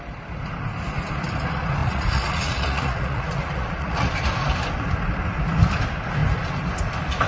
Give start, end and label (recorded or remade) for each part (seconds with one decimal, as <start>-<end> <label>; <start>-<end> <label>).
0.0-1.8 recorded; 1.8-4.1 remade; 4.1-7.3 recorded